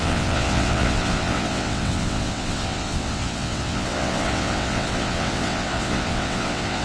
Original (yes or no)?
no